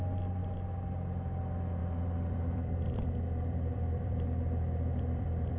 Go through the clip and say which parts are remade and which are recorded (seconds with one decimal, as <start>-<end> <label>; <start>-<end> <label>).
0.0-1.8 recorded; 1.8-5.6 remade